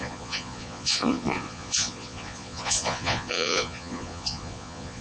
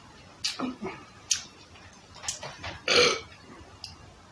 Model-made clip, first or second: first